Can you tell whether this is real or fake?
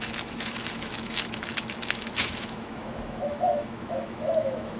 fake